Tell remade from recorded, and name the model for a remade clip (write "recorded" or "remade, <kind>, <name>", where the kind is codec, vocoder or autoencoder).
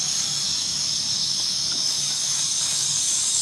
remade, codec, DAC